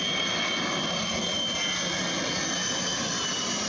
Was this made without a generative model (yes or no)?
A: yes